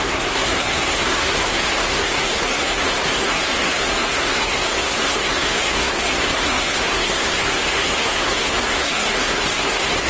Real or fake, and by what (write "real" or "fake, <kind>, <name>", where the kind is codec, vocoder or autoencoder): fake, codec, SNAC